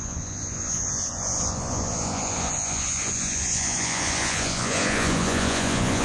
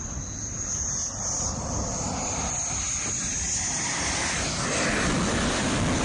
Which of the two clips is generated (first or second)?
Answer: first